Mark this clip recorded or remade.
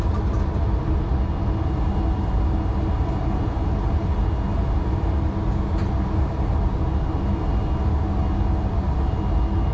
recorded